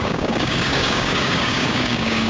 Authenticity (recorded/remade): remade